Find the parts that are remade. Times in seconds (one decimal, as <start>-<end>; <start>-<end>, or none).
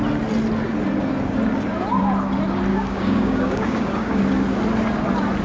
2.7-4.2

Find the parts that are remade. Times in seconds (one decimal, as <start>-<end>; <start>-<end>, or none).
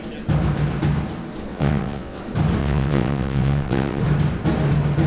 1.5-2.2; 2.6-4.0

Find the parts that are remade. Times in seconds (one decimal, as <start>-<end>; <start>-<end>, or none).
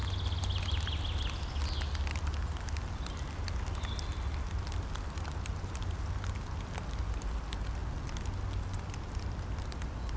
none